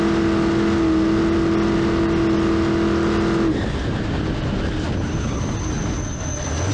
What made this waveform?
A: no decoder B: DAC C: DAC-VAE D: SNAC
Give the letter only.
A